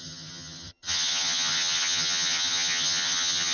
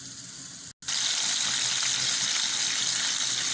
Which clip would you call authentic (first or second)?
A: second